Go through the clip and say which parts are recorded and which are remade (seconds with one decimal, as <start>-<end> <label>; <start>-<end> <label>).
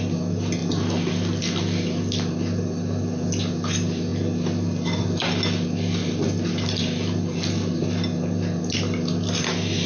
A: 0.0-9.9 recorded